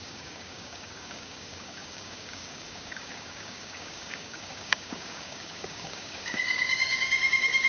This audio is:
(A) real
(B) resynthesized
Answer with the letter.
B